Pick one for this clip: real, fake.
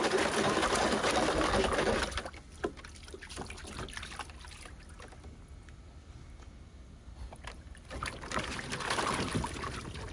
real